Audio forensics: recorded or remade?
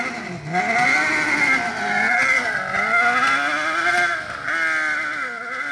recorded